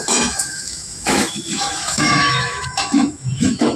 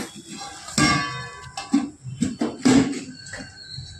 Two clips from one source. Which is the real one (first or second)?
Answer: second